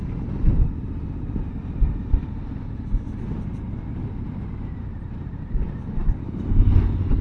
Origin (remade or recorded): recorded